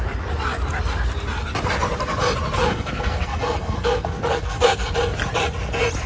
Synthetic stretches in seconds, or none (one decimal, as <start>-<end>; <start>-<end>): 2.6-4.9